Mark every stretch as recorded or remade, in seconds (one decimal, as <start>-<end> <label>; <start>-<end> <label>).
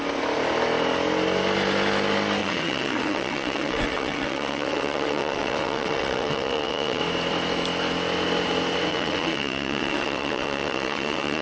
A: 0.0-2.4 recorded; 2.4-7.0 remade; 7.0-8.9 recorded; 8.9-11.4 remade